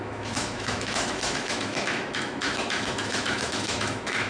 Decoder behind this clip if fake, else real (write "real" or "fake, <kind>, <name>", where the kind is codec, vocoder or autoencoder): fake, autoencoder, DAC-VAE